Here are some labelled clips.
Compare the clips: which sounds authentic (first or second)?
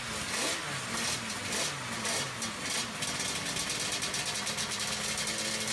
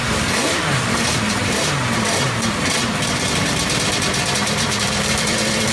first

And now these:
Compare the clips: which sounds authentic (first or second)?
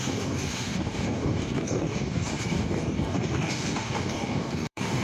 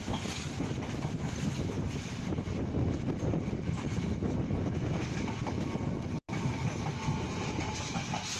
second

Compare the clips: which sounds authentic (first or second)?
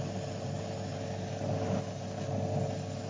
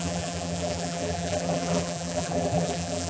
first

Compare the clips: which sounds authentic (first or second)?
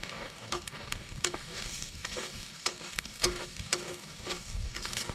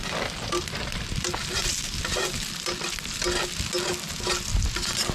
second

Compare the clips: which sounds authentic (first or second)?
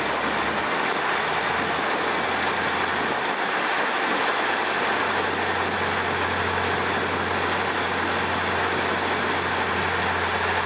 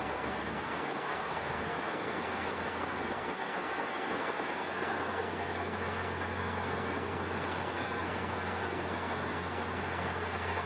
first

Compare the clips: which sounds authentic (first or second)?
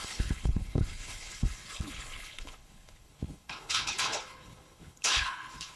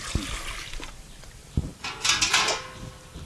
second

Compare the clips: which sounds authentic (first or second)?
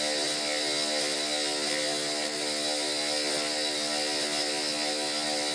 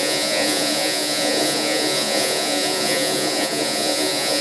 first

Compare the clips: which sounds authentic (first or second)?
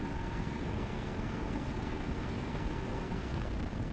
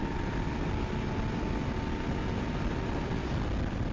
second